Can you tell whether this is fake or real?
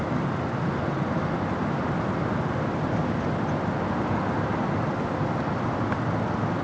real